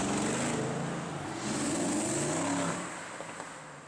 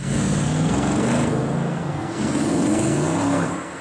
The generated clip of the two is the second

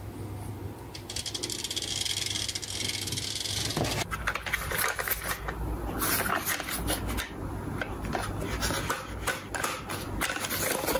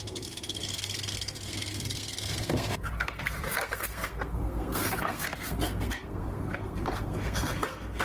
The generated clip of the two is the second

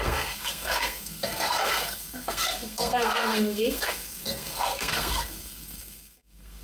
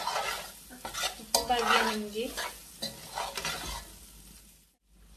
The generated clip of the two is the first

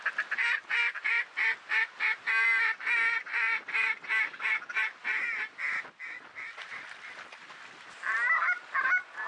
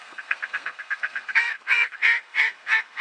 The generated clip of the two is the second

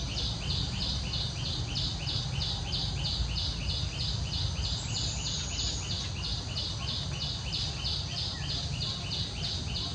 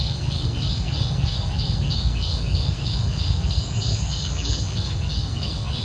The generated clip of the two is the second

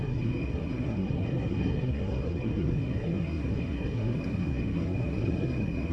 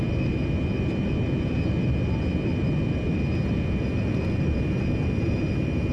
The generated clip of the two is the first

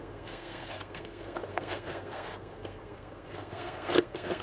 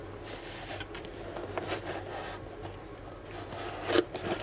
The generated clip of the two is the first